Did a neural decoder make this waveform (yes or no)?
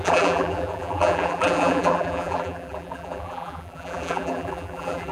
yes